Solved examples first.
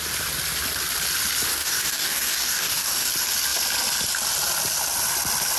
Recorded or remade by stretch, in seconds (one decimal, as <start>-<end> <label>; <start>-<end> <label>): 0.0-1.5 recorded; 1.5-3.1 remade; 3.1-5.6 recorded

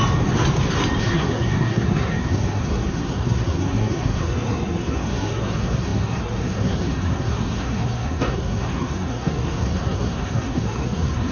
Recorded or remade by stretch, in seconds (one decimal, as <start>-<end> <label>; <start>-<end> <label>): 0.0-1.0 recorded; 1.0-11.3 remade

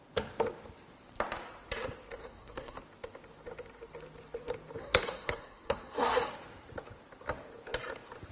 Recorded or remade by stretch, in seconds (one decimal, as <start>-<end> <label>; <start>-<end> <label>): 0.0-2.2 recorded; 2.2-2.8 remade; 2.8-4.8 recorded; 4.8-6.3 remade; 6.3-8.3 recorded

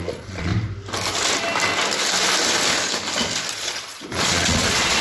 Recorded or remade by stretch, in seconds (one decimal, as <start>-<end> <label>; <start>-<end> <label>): 0.0-0.5 remade; 0.5-3.5 recorded; 3.5-5.0 remade

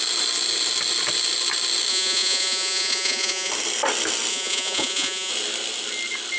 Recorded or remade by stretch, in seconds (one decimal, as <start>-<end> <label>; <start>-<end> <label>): 0.0-1.9 recorded; 1.9-3.5 remade; 3.5-4.3 recorded; 4.3-5.3 remade; 5.3-6.4 recorded

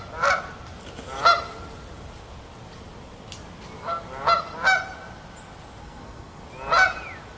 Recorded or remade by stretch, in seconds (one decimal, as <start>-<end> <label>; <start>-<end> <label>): 0.0-5.8 recorded; 5.8-6.4 remade; 6.4-7.4 recorded